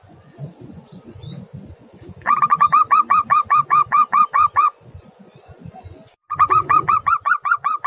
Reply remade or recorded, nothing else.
remade